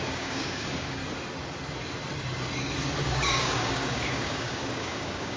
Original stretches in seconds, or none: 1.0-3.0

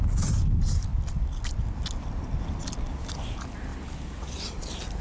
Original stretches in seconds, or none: 0.0-5.0